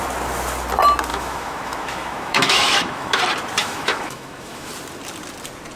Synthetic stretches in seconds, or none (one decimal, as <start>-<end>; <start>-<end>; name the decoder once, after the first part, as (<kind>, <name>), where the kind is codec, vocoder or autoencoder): 1.1-3.2 (autoencoder, DAC-VAE); 3.6-4.7